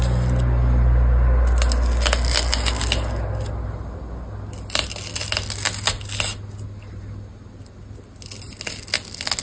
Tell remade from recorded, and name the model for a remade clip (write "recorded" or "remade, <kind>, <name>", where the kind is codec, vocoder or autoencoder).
recorded